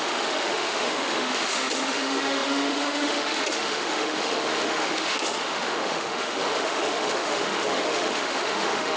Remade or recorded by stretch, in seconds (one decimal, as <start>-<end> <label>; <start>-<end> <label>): 0.0-9.0 remade